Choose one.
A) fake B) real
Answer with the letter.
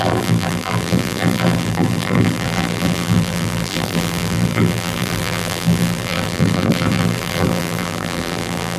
A